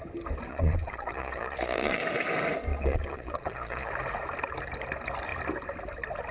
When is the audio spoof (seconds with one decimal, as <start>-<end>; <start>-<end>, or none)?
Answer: 0.5-2.0; 2.7-3.9